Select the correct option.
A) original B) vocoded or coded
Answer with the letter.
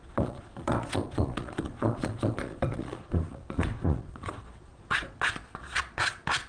B